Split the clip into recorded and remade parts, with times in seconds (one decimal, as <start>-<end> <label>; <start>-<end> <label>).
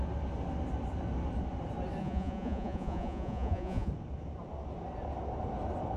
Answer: 0.0-2.0 recorded; 2.0-3.9 remade; 3.9-6.0 recorded